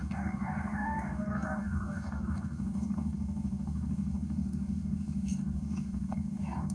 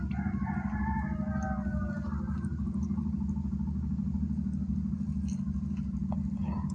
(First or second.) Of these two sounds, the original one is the second